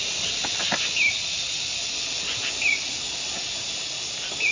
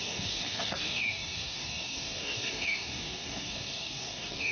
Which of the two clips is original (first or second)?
first